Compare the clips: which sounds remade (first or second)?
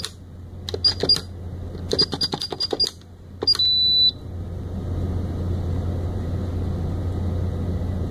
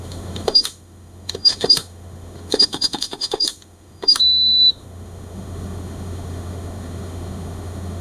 second